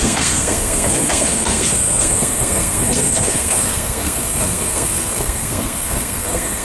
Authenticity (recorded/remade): remade